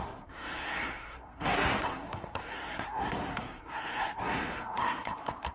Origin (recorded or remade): remade